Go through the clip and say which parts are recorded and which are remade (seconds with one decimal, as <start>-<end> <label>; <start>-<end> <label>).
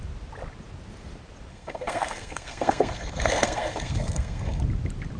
0.0-1.5 recorded; 1.5-4.6 remade; 4.6-5.2 recorded